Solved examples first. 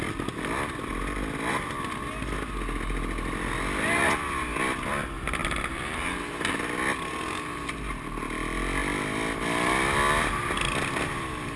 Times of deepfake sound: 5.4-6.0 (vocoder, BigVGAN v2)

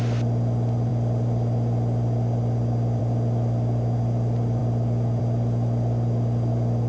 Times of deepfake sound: none